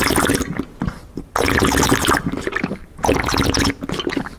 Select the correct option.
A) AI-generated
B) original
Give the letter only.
B